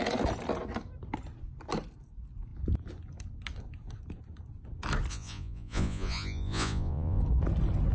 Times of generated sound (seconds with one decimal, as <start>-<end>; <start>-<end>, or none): 5.1-7.2